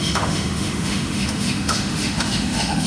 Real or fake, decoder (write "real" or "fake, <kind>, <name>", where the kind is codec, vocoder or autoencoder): fake, autoencoder, DAC-VAE